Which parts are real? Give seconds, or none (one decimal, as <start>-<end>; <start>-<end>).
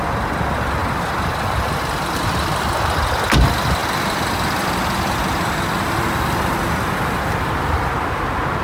0.0-8.6